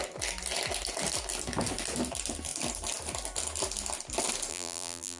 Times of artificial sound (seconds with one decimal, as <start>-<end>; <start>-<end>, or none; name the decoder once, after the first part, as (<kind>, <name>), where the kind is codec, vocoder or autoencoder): 4.5-5.2 (vocoder, BigVGAN v2)